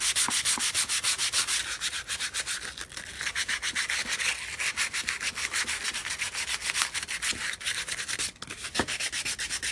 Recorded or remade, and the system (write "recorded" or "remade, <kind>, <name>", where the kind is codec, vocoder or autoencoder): recorded